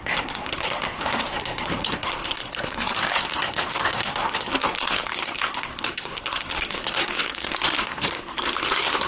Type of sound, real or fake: fake